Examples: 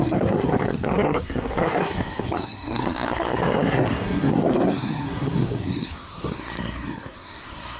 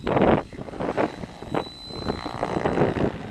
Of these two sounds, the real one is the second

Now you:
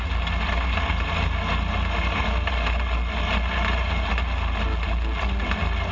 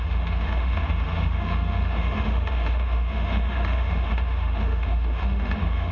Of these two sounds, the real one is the first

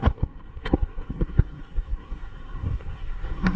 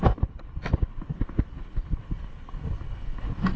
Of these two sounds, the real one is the second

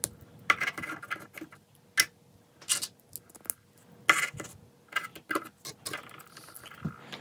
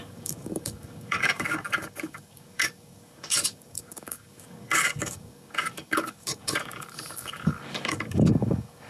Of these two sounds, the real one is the first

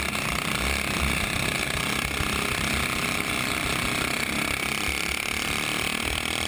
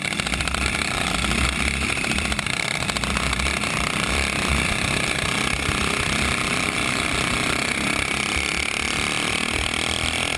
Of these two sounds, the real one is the first